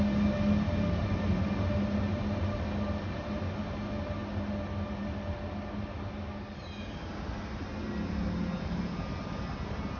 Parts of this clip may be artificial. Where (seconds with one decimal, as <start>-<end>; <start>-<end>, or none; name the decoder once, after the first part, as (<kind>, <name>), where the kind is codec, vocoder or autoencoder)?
none